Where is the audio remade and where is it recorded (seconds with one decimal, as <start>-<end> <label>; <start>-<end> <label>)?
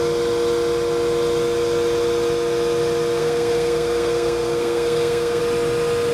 0.0-3.2 recorded; 3.2-5.4 remade; 5.4-6.1 recorded